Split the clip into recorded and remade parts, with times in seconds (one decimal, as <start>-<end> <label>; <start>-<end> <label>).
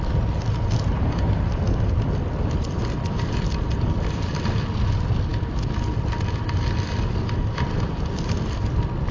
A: 0.0-9.1 recorded